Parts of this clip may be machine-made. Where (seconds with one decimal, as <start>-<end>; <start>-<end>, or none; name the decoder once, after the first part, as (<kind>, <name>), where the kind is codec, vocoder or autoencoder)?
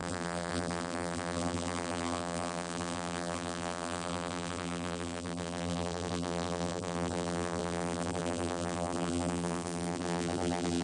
0.0-10.8 (vocoder, BigVGAN v2)